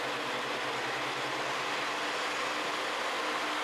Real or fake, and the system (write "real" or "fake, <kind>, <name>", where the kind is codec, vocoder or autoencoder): real